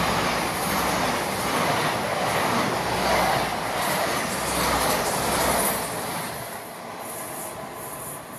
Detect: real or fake real